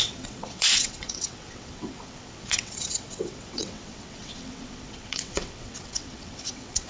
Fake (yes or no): yes